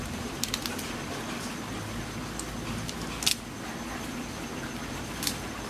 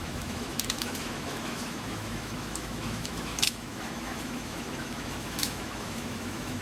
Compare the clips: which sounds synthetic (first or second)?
second